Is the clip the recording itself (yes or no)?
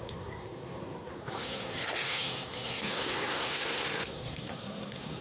no